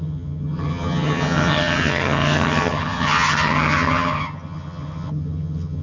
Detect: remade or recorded remade